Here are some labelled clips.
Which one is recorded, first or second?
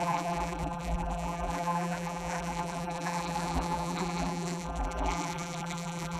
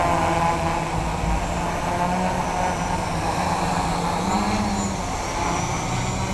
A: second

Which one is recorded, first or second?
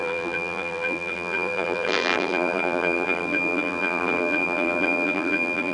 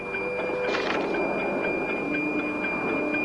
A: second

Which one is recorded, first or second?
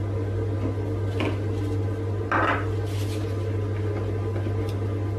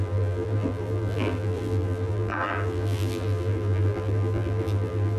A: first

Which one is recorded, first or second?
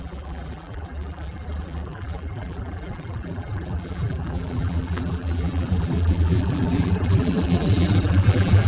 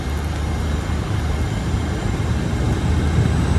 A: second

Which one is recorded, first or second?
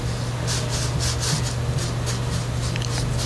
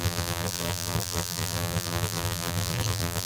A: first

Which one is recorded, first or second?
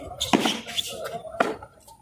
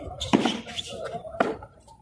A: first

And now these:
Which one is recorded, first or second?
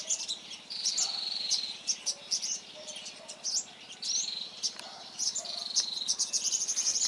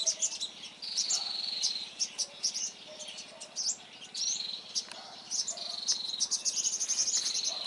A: second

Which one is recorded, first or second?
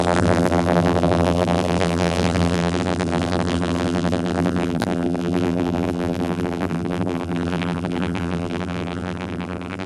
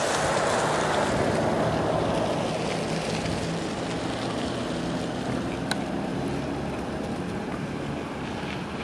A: second